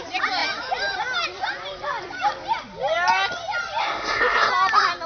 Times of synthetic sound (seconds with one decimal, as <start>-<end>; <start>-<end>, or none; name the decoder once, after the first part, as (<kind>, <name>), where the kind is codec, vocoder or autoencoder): 3.8-4.5 (codec, SNAC)